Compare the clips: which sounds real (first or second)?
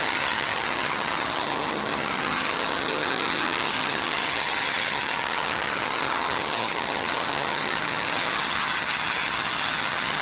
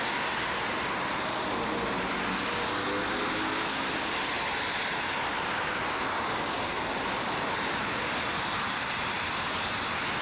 second